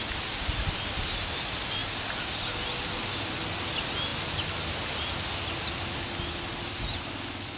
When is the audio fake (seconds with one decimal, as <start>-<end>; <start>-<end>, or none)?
none